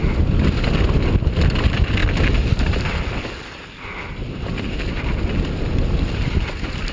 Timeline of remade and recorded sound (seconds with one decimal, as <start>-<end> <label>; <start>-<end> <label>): 0.0-6.9 recorded